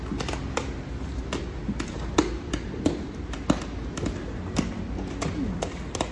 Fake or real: real